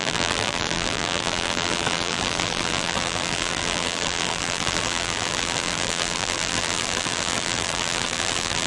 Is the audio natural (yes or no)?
no